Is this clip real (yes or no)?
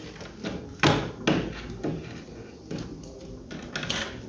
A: yes